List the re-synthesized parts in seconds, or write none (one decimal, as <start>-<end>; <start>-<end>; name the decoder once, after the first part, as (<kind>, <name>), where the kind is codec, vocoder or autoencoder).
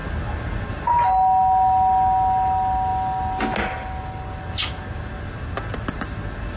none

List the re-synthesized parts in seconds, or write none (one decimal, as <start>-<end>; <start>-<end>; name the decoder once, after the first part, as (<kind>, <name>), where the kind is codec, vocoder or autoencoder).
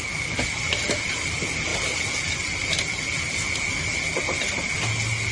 none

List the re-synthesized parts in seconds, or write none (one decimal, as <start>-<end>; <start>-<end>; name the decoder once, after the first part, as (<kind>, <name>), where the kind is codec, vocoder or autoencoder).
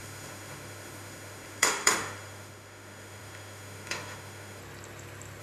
0.0-4.6 (autoencoder, DAC-VAE)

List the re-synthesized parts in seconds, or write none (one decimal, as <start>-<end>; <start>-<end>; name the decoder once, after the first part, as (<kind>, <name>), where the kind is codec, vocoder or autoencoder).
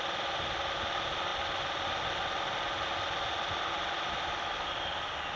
none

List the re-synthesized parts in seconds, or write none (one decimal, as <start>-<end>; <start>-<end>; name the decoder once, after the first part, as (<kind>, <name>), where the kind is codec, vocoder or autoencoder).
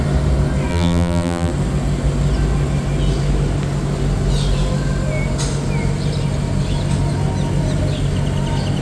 0.7-1.5 (vocoder, BigVGAN v2)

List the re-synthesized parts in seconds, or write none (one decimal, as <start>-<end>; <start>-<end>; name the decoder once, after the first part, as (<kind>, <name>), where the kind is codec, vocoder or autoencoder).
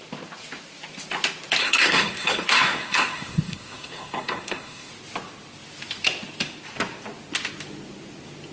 1.6-4.9 (codec, SNAC)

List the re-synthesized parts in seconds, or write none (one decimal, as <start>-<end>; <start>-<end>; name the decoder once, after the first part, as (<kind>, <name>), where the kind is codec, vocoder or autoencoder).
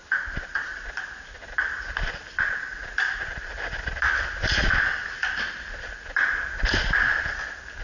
none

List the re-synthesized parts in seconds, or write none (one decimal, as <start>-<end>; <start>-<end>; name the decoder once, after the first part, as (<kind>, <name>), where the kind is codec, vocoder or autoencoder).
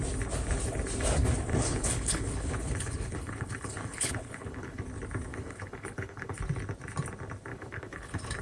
1.5-4.8 (codec, HILCodec); 5.3-6.4; 7.5-8.4